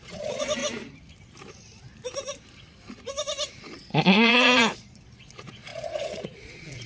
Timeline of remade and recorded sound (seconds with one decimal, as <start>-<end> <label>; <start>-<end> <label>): 0.0-0.6 remade; 0.6-3.6 recorded; 3.6-6.9 remade